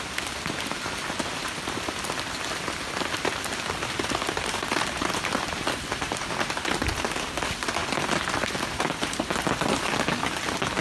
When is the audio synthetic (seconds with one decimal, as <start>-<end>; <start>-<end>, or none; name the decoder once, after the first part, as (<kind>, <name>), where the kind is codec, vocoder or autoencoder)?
1.4-6.3 (vocoder, BigVGAN v2); 7.8-9.3

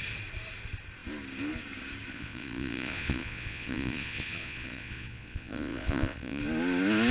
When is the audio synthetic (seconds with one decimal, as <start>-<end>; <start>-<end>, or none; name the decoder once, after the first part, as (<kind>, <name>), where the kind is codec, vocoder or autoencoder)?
2.1-6.4 (vocoder, Vocos)

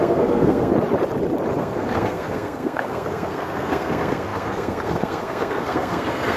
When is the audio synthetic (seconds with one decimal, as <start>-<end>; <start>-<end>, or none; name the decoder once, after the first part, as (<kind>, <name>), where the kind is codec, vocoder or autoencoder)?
0.0-0.7 (codec, SNAC); 1.6-6.4

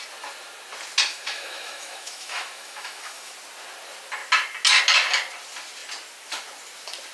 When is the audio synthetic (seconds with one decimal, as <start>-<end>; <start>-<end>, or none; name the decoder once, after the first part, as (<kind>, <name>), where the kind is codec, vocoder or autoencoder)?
1.1-3.3 (autoencoder, DAC-VAE)

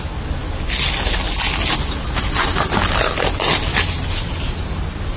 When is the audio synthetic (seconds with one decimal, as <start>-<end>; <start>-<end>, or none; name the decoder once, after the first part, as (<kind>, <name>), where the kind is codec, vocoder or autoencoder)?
none